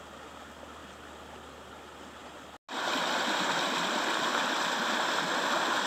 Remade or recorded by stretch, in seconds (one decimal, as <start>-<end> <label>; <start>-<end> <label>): 0.0-5.9 recorded